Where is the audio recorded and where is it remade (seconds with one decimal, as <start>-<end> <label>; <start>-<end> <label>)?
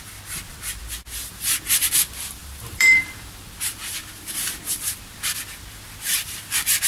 0.0-2.4 recorded; 2.4-3.7 remade; 3.7-6.9 recorded